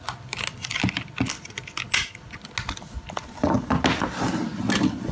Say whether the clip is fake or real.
real